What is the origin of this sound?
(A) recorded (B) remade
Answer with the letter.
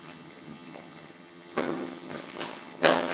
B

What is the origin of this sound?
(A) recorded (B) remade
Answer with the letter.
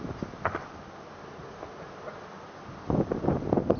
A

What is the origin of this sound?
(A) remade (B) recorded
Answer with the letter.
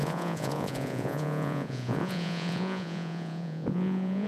A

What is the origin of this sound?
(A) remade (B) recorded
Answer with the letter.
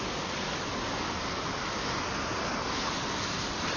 B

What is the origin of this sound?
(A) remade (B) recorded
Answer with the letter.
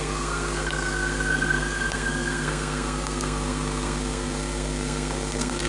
A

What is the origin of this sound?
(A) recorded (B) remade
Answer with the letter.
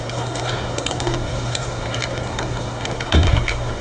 B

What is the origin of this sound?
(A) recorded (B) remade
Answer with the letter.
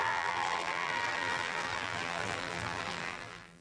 B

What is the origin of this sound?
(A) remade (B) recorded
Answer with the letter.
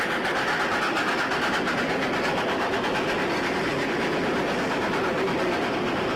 B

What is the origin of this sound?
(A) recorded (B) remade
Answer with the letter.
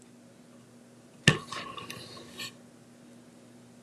A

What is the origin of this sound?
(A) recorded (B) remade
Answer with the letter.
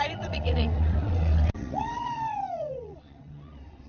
B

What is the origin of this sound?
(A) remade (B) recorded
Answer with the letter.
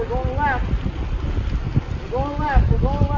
B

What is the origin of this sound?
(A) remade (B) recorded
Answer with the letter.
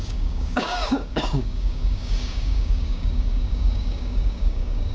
A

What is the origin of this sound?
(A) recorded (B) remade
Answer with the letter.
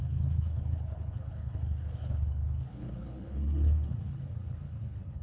B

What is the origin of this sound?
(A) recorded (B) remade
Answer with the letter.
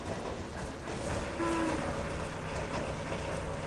A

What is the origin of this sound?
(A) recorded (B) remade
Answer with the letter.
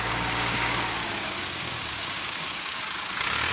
B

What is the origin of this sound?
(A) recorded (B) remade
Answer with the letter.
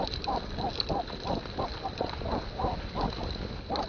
A